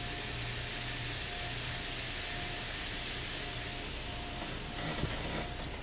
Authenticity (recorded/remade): recorded